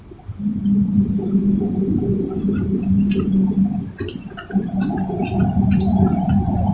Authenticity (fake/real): real